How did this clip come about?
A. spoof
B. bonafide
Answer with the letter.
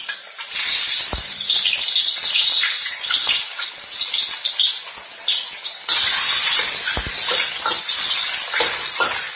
B